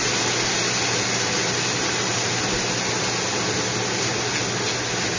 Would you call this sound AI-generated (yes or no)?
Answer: no